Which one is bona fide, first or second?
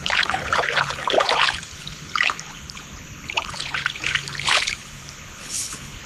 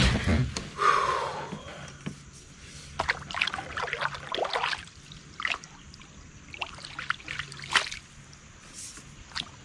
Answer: second